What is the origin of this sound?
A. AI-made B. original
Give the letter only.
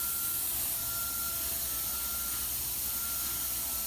B